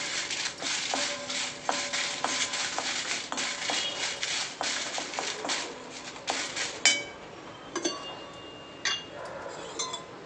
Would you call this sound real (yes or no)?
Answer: yes